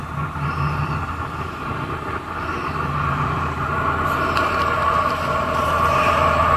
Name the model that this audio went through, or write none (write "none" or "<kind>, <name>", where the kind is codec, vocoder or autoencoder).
vocoder, BigVGAN v2